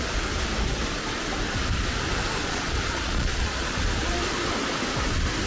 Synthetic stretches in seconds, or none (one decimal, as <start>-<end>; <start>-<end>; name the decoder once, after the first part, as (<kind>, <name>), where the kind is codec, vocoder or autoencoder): 2.4-3.8 (vocoder, Vocos)